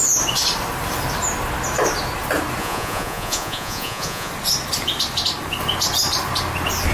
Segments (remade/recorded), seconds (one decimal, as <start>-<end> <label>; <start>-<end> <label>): 0.0-2.6 recorded; 2.6-4.3 remade; 4.3-6.9 recorded